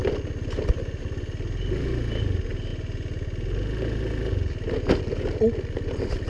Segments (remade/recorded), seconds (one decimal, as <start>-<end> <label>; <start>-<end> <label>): 0.0-6.3 recorded